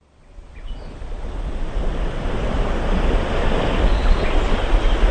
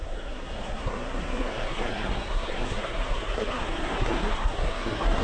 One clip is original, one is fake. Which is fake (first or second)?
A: second